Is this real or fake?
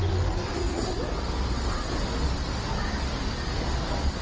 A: real